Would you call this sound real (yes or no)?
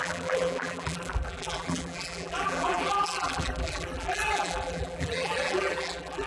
no